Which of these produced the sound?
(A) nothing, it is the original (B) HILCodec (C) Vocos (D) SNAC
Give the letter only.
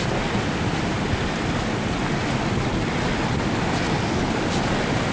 A